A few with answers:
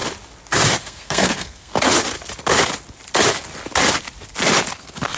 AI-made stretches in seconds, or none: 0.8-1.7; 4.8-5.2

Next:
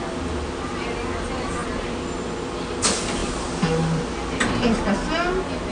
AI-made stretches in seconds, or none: none